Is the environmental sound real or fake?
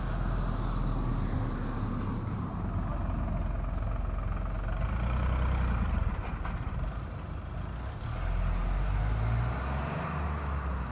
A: real